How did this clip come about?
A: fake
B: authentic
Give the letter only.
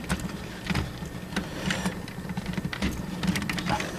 B